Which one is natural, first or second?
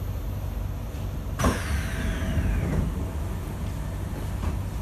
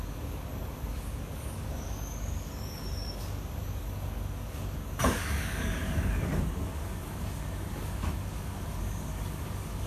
first